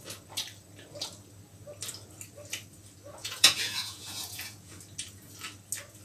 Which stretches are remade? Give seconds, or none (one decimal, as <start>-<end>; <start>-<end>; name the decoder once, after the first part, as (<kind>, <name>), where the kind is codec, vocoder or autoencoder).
3.2-4.8 (vocoder, Vocos)